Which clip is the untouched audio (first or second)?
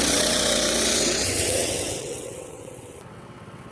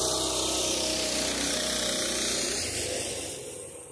second